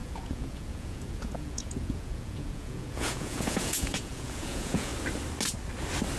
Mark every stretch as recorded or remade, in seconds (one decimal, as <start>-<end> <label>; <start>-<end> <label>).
0.0-4.9 remade; 4.9-6.2 recorded